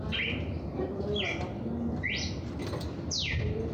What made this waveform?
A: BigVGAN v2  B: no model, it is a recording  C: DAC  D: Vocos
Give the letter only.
B